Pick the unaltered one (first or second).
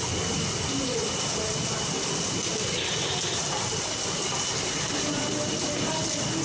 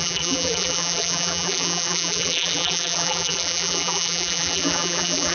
first